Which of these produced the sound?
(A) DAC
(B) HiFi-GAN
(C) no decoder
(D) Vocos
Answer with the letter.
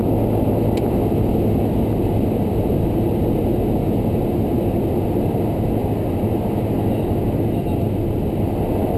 C